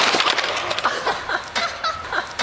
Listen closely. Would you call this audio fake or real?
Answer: fake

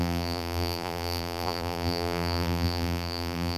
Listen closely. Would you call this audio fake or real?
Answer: fake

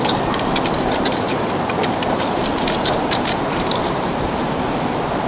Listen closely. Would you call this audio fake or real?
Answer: fake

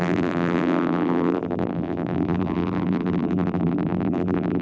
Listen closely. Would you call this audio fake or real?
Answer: fake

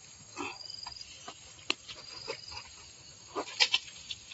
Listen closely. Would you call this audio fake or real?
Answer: real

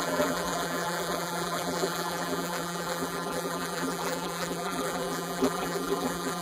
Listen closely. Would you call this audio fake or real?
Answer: fake